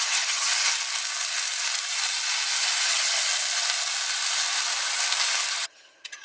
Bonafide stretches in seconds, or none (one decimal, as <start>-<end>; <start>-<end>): 0.5-2.8; 3.2-5.5